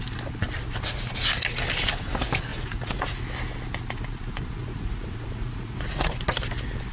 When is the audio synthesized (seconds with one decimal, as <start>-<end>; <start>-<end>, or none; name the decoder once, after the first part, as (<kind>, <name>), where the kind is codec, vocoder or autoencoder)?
2.5-3.2 (vocoder, Vocos); 4.6-6.2